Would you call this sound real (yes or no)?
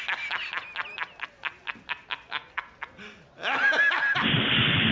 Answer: yes